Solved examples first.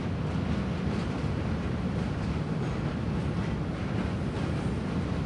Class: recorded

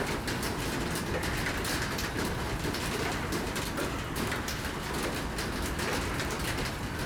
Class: recorded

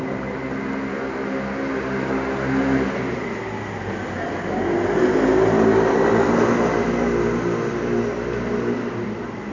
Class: recorded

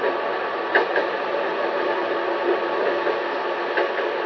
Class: recorded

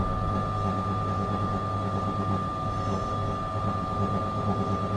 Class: recorded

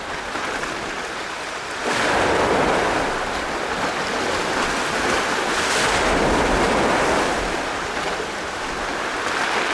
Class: recorded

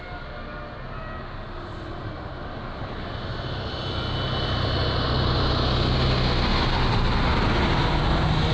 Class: recorded